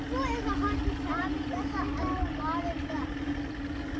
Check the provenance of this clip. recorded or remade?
recorded